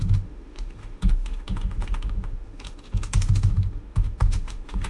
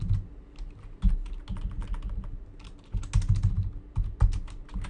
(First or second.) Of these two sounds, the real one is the second